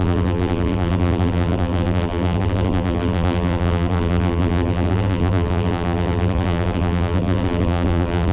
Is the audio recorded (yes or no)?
no